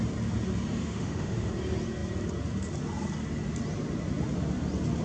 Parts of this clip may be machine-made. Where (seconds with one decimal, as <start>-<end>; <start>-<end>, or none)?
0.8-1.5